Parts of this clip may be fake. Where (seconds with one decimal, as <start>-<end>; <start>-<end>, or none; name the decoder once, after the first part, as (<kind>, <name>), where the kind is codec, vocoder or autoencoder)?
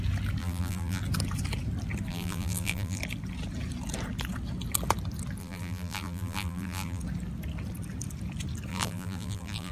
0.4-1.0 (vocoder, BigVGAN v2); 2.1-3.0; 5.4-7.0; 8.7-9.7